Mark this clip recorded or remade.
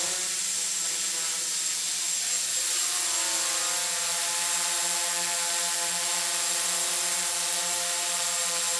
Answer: recorded